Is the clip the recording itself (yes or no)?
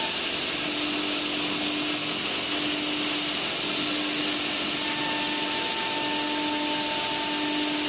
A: yes